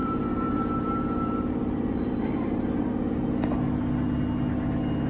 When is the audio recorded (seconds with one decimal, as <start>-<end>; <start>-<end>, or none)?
2.9-5.1